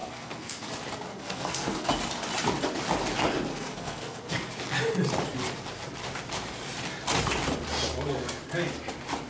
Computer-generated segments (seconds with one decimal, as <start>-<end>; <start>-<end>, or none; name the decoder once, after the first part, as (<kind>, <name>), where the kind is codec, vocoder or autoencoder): 0.0-0.7 (codec, SNAC); 1.1-1.9; 3.5-4.5